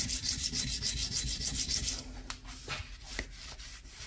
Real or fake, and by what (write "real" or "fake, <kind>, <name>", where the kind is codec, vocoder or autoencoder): real